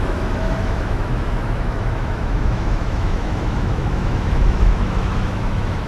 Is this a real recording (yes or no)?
no